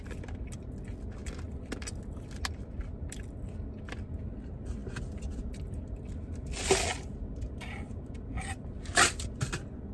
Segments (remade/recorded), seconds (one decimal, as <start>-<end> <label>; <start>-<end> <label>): 0.0-9.9 recorded